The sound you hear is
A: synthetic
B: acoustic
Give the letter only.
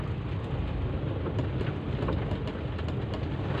B